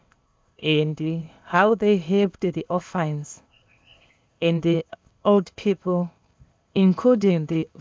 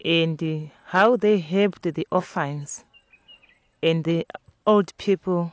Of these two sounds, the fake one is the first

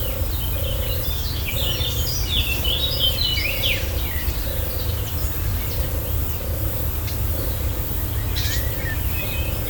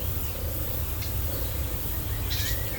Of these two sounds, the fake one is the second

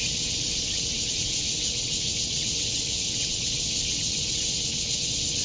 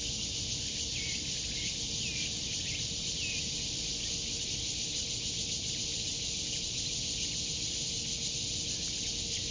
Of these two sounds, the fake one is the first